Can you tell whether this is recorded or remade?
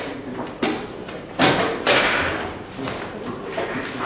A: recorded